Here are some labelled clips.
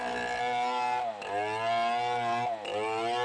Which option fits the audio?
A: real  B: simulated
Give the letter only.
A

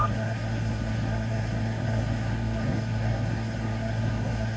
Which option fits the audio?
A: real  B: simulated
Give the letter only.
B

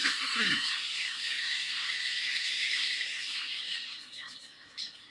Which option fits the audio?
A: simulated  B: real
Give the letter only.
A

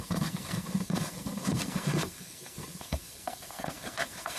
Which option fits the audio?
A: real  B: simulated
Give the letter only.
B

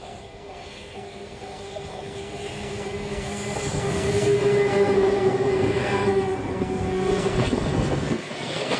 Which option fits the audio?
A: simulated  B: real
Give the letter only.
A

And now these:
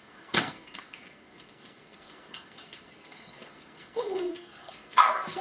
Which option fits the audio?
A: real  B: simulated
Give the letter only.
B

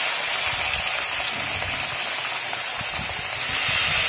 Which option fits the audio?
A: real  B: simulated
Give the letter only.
A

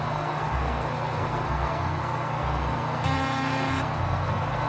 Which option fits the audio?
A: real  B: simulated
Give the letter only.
B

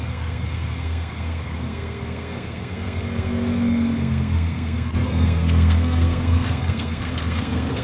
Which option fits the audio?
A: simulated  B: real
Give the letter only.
A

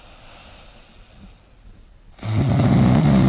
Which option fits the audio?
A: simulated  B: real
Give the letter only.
B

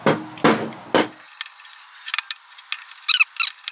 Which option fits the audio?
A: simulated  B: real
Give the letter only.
B